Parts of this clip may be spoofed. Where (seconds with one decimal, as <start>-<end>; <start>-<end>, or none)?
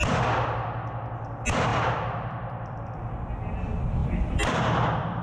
1.7-3.0; 4.0-5.2